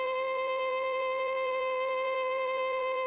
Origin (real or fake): fake